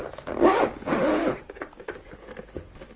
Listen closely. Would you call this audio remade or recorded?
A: recorded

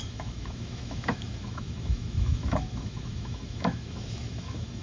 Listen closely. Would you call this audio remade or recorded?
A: remade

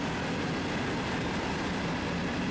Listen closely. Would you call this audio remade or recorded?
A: recorded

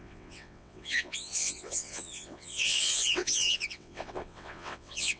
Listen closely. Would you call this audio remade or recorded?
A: remade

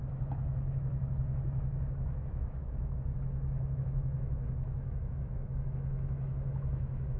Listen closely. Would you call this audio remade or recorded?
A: remade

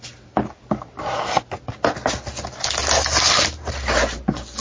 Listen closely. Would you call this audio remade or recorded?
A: recorded